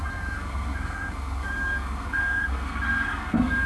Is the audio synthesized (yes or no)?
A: yes